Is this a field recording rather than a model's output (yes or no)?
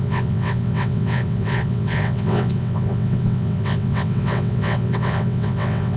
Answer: no